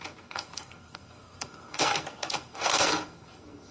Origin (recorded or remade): remade